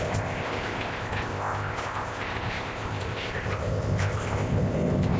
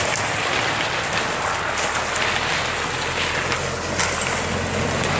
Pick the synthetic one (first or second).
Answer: first